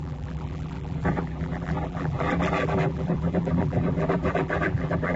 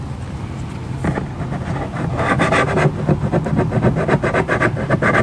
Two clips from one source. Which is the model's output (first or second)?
first